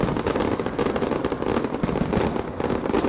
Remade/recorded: recorded